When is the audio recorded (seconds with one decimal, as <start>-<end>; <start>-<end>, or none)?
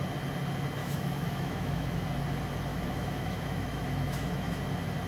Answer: 0.0-0.8; 2.0-2.7; 4.6-5.1